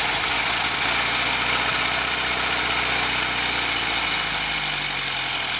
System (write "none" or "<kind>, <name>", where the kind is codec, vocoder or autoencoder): none